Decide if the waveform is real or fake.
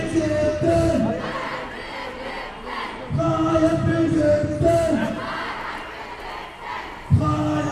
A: real